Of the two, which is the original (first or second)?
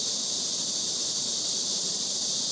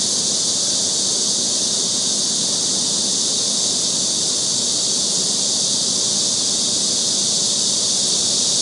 second